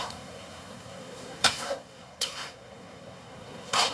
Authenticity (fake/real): fake